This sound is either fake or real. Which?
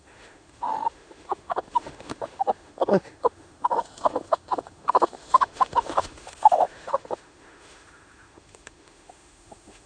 fake